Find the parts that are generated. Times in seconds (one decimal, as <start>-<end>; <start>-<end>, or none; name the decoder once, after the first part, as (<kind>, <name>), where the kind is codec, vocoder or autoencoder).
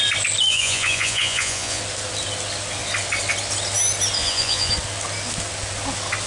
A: 0.5-1.8 (vocoder, Vocos); 4.2-4.7